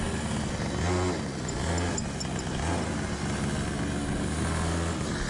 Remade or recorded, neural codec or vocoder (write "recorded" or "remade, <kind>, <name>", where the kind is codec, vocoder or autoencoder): recorded